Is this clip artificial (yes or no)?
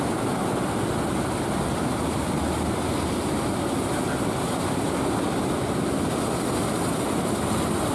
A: no